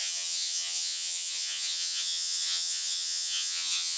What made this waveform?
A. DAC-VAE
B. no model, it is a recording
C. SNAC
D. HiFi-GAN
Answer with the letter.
D